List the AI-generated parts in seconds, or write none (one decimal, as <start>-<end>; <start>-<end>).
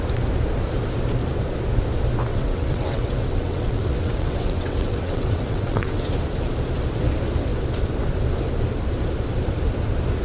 2.3-6.1